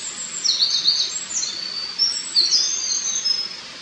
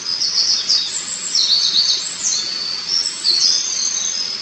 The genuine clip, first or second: first